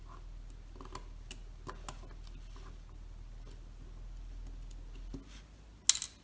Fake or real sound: real